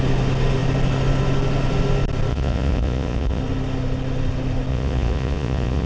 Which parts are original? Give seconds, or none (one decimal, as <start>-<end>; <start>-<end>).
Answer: 0.0-2.3; 3.4-4.7